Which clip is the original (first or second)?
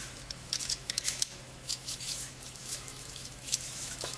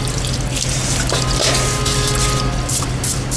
second